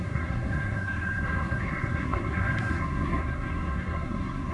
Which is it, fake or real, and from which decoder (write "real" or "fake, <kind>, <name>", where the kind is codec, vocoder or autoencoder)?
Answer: fake, codec, SNAC